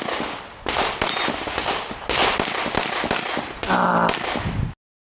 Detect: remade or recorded recorded